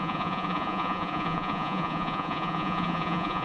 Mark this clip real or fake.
fake